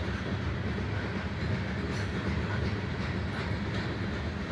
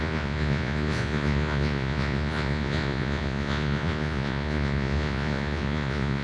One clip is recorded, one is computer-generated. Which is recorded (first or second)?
first